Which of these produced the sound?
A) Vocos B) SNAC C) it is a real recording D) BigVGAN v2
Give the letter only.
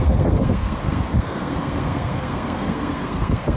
B